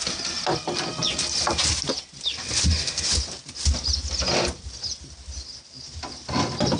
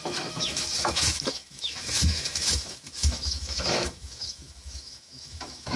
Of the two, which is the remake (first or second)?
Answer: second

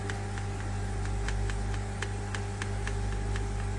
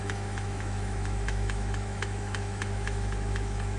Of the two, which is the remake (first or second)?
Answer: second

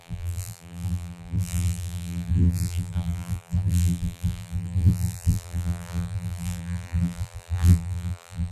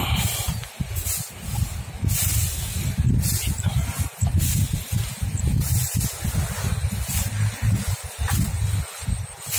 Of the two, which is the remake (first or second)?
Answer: first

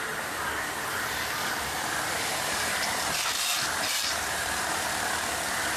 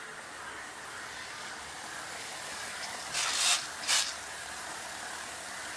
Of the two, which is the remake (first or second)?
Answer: first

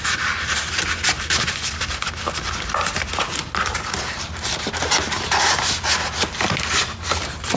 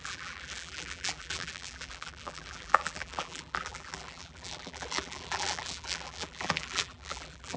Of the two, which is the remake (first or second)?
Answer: second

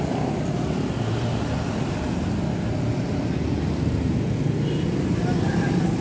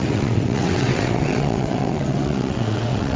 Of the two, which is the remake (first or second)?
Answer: second